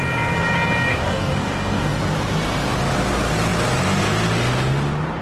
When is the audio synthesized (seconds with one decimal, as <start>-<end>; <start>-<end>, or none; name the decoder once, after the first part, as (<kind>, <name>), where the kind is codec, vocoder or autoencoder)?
0.9-2.0 (codec, DAC)